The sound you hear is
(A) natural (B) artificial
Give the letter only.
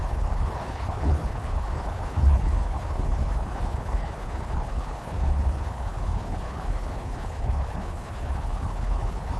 B